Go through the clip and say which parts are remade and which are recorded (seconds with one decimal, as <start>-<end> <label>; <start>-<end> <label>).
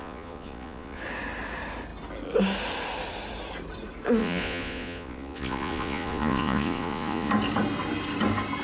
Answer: 0.0-1.0 remade; 1.0-4.2 recorded; 4.2-7.3 remade; 7.3-8.6 recorded